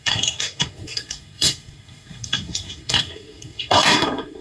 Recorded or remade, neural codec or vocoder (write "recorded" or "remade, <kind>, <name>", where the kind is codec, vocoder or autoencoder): remade, codec, SNAC